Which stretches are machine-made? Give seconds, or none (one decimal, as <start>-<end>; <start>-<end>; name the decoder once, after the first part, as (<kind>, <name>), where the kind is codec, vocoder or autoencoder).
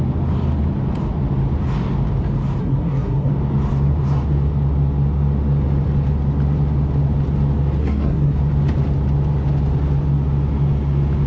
2.6-3.3 (codec, SNAC); 7.8-8.4